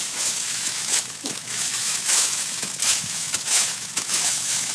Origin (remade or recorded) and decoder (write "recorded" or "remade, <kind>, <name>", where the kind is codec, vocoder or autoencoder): remade, autoencoder, DAC-VAE